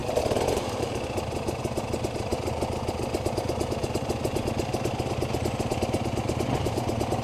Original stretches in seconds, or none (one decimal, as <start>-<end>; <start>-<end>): 0.9-7.2